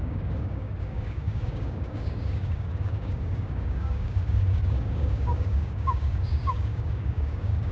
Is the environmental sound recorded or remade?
remade